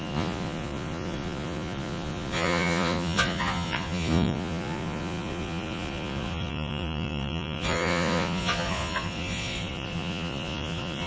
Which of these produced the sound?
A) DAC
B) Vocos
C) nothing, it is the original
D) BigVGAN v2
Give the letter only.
B